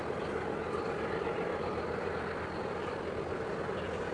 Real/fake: real